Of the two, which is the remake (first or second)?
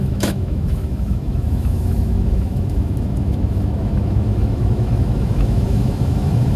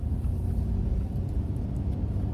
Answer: first